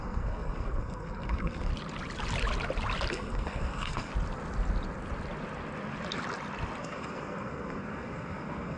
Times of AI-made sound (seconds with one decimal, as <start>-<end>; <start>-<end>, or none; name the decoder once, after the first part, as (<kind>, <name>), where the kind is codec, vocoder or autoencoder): 0.0-1.7 (codec, SNAC); 3.1-4.1; 6.8-8.8